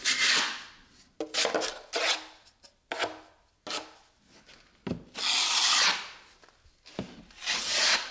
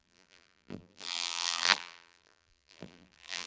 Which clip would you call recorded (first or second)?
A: first